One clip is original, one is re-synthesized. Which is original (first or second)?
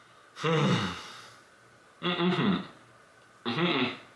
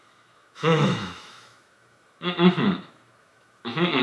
first